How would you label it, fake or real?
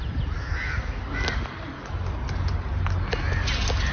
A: real